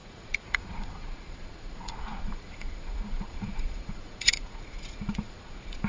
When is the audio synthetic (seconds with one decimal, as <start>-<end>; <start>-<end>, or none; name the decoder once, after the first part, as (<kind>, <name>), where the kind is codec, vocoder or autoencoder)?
0.0-5.9 (vocoder, Vocos)

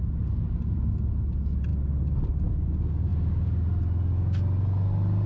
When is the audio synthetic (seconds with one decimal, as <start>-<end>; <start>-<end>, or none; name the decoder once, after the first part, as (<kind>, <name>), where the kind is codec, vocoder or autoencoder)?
none

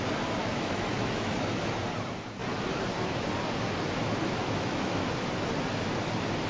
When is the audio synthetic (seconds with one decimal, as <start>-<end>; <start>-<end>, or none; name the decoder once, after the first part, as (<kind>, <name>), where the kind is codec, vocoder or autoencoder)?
0.4-1.6 (autoencoder, DAC-VAE); 4.4-5.0